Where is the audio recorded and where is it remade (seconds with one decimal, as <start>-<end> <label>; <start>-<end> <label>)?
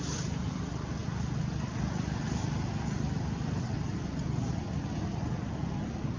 0.0-6.2 recorded